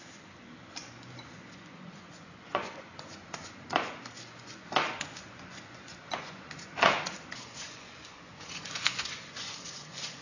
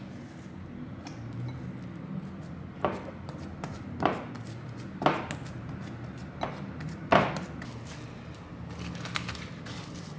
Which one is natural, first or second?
second